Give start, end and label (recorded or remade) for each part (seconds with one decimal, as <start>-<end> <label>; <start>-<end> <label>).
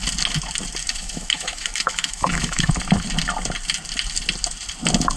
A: 0.0-0.8 recorded; 0.8-2.7 remade; 2.7-5.2 recorded